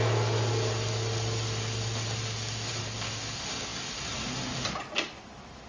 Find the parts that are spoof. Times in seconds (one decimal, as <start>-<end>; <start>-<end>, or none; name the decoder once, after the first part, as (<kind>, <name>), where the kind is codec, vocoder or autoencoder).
none